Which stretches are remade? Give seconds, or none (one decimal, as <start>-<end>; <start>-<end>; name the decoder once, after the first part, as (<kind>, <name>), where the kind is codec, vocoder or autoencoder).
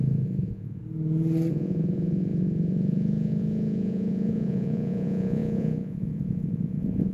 0.0-0.8 (vocoder, Vocos); 1.5-7.1